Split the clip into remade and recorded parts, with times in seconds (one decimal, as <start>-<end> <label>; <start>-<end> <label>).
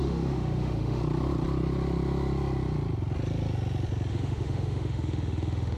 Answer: 0.0-1.0 remade; 1.0-4.1 recorded; 4.1-5.8 remade